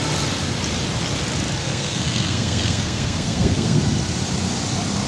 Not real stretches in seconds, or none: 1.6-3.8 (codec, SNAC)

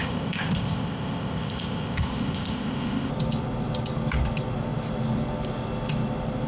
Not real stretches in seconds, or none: 0.0-3.1 (codec, ZipCodec)